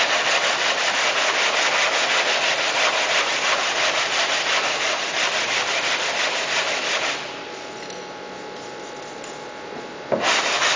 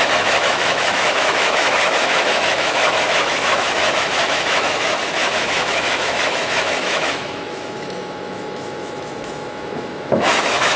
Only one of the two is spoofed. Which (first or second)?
second